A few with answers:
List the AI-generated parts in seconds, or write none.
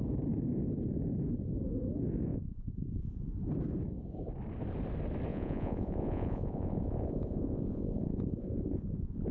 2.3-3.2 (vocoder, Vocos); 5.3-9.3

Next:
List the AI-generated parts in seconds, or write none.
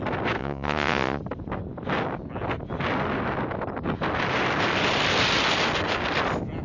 0.4-1.2 (vocoder, Vocos)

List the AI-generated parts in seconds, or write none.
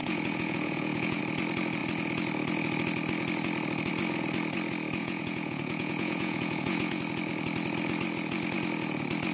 0.0-1.2 (vocoder, Vocos); 5.0-7.0